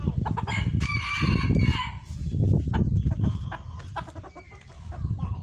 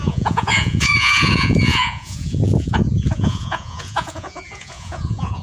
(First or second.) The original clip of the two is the first